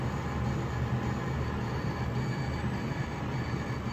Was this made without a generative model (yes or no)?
yes